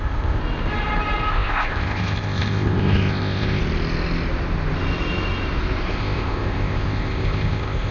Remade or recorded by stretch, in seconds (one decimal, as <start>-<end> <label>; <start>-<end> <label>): 0.0-0.4 remade; 0.4-1.3 recorded; 1.3-3.6 remade; 3.6-5.9 recorded; 5.9-7.9 remade